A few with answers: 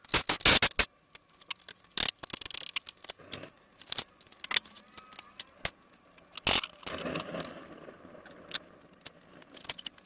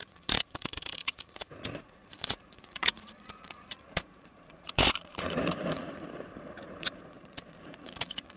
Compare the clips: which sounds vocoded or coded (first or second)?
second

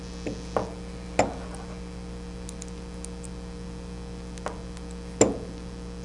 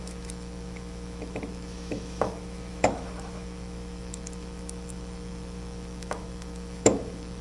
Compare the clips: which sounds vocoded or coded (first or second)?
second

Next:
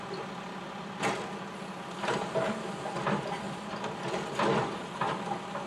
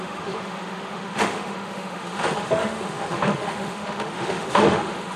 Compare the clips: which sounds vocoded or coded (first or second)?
second